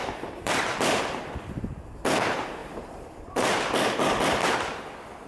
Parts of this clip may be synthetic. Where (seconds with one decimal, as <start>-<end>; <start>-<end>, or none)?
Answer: 0.0-1.7; 2.6-4.8